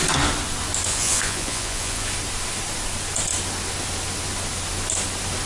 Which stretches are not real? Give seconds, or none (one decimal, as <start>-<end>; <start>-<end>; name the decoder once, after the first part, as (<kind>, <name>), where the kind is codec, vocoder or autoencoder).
0.9-2.1 (vocoder, Vocos)